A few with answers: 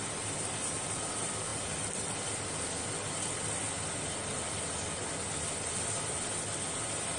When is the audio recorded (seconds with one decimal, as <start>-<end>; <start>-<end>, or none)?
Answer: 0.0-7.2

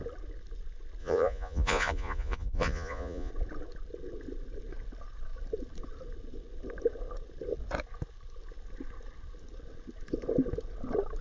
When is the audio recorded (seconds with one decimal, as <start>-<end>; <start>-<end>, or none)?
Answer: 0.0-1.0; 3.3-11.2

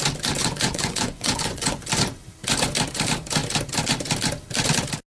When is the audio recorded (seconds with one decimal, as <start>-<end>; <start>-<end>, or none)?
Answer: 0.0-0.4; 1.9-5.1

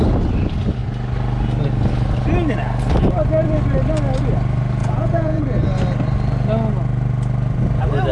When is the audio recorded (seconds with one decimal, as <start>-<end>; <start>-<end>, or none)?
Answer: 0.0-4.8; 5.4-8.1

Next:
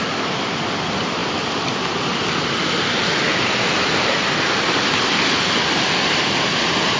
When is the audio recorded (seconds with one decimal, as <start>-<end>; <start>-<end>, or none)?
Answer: 0.0-7.0

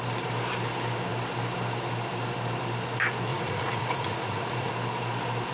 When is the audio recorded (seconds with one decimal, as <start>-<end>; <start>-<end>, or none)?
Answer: 0.0-3.3; 4.7-5.5

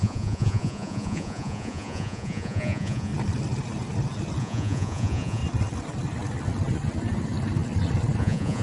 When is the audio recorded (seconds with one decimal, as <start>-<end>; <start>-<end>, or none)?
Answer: 3.1-4.4; 5.4-8.2